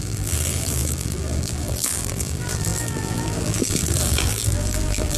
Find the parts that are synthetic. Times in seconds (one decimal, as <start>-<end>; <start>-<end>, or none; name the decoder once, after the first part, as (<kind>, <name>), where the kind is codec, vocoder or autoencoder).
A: 0.0-5.2 (vocoder, BigVGAN v2)